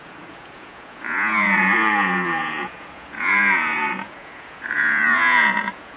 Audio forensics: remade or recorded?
remade